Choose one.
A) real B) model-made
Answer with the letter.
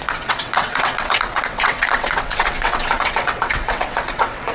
B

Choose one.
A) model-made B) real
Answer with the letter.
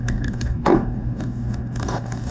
A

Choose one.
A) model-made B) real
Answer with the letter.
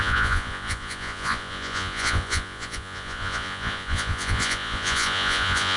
A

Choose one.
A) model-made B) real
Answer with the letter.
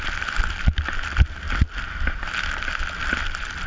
B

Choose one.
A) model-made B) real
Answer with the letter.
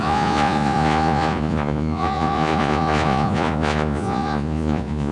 A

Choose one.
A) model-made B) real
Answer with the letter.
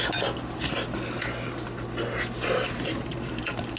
B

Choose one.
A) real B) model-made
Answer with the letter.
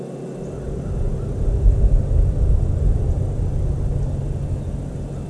A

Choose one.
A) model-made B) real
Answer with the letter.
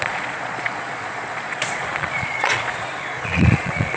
A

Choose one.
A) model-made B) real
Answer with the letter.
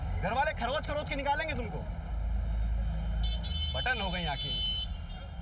B